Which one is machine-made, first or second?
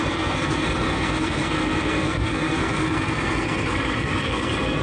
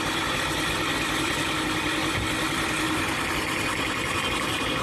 first